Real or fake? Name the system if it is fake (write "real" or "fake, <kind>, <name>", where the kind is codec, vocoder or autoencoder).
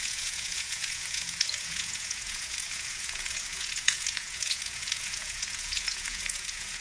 fake, vocoder, Vocos